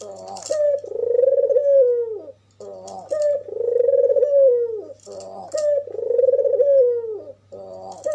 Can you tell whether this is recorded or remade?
recorded